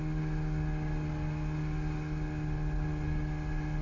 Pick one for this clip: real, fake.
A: real